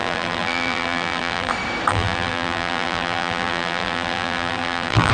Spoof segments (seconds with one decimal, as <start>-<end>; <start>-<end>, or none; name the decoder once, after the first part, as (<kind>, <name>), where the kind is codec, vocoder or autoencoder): 0.0-1.5 (vocoder, BigVGAN v2); 1.9-5.1